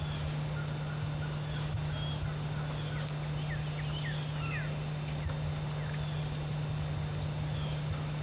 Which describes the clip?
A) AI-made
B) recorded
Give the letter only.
B